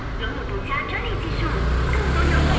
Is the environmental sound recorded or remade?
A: recorded